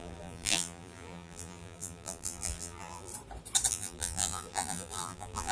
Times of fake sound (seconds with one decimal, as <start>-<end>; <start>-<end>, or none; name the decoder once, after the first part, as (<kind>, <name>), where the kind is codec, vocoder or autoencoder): 0.0-3.1 (vocoder, BigVGAN v2); 3.7-5.5